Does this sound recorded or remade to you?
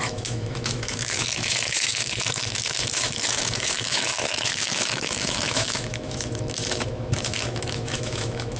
remade